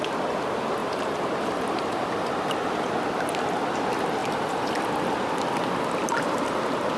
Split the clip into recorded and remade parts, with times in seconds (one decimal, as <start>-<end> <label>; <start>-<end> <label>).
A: 0.0-0.8 recorded; 0.8-2.3 remade; 2.3-4.2 recorded; 4.2-5.0 remade; 5.0-7.0 recorded